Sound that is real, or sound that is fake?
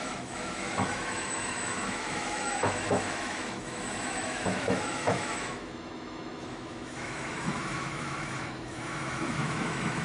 fake